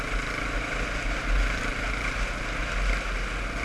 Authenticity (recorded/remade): recorded